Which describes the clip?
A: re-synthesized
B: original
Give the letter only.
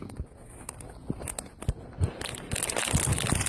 B